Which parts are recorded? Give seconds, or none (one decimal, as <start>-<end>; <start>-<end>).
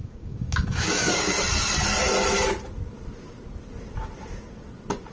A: 1.3-5.1